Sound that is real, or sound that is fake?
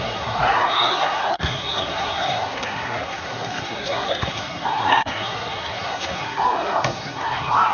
fake